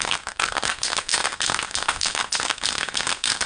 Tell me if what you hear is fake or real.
fake